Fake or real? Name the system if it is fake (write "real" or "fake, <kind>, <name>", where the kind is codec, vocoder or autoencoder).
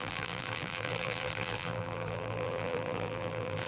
fake, vocoder, BigVGAN v2